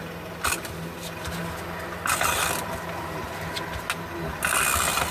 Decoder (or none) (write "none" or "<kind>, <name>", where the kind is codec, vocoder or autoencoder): none